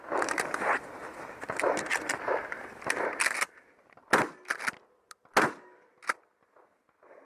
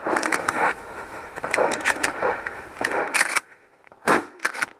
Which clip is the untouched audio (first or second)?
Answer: first